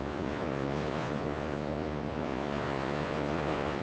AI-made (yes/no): yes